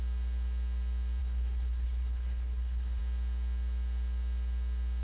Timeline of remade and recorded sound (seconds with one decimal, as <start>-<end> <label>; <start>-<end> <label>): 0.0-1.2 recorded; 1.2-3.0 remade; 3.0-5.0 recorded